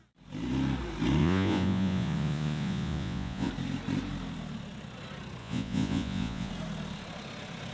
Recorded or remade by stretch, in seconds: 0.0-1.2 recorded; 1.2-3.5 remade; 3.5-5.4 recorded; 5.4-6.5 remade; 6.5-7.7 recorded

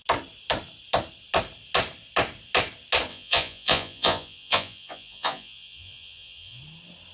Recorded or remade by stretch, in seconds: 0.0-3.1 recorded; 3.1-6.6 remade; 6.6-7.1 recorded

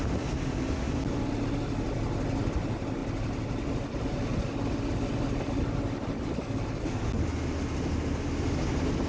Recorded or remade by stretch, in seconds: 0.0-9.1 recorded